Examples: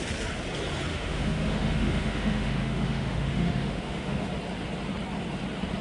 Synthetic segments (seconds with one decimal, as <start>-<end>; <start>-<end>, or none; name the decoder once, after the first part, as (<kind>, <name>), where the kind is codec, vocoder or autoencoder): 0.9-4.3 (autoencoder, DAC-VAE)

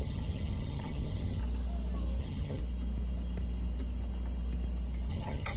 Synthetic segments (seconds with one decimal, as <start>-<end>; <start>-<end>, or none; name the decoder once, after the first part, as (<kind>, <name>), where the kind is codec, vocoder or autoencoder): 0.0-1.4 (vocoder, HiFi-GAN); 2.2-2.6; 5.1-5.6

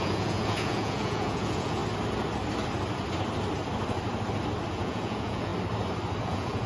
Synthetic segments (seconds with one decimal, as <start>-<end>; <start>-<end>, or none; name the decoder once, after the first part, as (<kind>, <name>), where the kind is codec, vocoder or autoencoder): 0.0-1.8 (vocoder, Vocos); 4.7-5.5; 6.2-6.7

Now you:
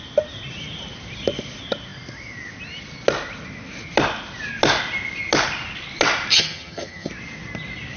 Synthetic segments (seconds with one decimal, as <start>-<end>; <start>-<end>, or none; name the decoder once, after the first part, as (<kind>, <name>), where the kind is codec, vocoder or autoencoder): 6.3-7.1 (vocoder, HiFi-GAN)